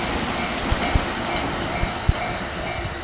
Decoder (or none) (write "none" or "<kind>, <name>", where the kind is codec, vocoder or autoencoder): none